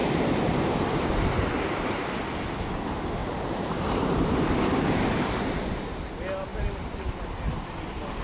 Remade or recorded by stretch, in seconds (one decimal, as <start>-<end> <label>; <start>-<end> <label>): 0.0-1.1 remade; 1.1-3.2 recorded; 3.2-6.1 remade; 6.1-8.2 recorded